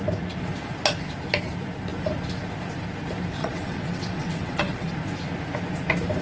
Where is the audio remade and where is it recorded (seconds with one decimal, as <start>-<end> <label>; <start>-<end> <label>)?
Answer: 0.0-3.4 recorded; 3.4-4.9 remade; 4.9-6.2 recorded